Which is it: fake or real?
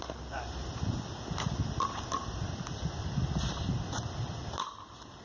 real